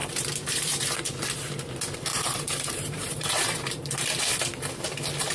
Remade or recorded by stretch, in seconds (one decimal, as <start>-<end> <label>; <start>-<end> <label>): 0.0-0.8 remade; 0.8-2.1 recorded; 2.1-4.2 remade; 4.2-5.3 recorded